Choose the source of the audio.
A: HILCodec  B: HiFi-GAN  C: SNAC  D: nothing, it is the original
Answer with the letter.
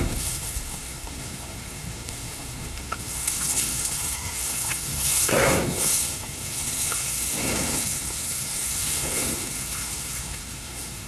C